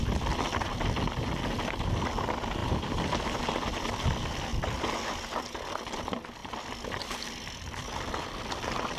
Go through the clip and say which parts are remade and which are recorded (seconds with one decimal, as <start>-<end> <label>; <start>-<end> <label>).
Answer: 0.0-2.6 recorded; 2.6-3.4 remade; 3.4-4.5 recorded; 4.5-5.4 remade; 5.4-6.4 recorded; 6.4-8.4 remade; 8.4-9.0 recorded